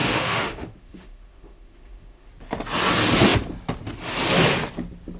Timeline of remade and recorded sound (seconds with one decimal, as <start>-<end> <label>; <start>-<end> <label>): 0.0-2.3 remade; 2.3-5.2 recorded